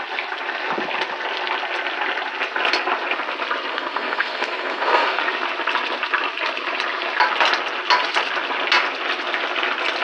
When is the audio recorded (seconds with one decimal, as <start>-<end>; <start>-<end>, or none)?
0.0-3.7; 5.2-10.0